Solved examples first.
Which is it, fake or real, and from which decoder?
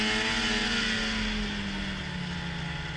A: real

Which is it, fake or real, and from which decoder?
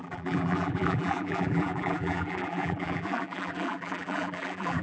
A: fake, vocoder, BigVGAN v2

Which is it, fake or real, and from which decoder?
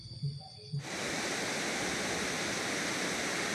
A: real